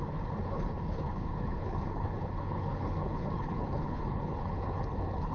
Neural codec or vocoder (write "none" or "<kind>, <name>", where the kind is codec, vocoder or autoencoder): codec, HILCodec